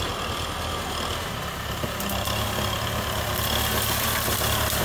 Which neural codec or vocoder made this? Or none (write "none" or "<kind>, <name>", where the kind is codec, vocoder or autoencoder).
none